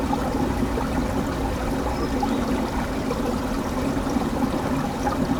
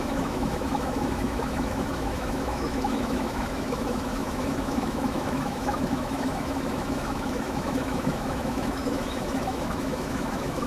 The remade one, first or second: second